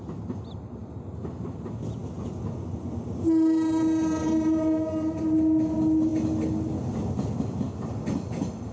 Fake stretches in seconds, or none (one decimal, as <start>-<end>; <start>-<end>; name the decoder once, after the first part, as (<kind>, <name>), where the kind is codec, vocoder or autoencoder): none

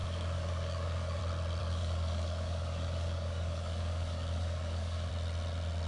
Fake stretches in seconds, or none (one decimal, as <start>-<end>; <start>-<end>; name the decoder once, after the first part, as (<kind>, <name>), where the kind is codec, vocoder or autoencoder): 0.0-1.2 (codec, DAC); 1.6-5.1